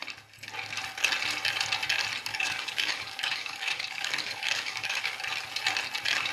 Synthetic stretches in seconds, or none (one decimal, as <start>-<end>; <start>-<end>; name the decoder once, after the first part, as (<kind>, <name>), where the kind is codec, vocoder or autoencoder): 2.3-5.2 (codec, DAC)